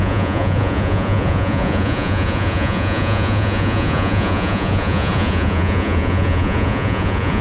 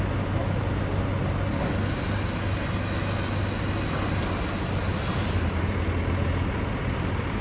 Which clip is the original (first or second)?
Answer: second